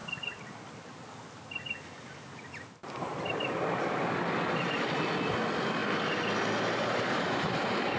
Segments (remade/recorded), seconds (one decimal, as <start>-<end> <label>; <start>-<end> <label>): 0.0-8.0 recorded